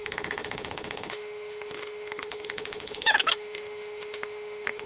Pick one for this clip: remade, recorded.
remade